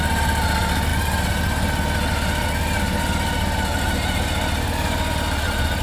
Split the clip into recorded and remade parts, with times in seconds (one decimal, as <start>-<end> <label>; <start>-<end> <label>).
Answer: 0.0-5.8 recorded